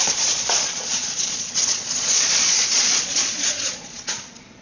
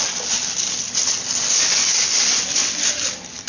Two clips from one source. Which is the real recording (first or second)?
second